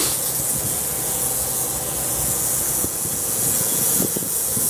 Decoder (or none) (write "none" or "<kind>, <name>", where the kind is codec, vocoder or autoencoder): vocoder, Vocos